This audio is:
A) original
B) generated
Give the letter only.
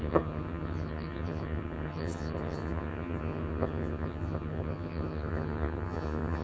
B